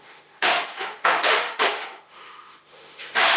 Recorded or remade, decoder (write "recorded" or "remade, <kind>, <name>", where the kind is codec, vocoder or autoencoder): remade, autoencoder, DAC-VAE